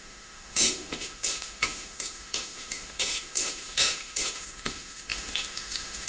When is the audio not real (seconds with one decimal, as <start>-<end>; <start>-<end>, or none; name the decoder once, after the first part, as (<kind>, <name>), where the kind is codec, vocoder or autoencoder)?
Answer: 0.0-6.1 (autoencoder, DAC-VAE)